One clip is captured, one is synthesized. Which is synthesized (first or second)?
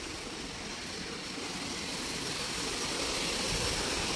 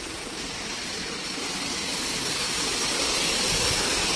first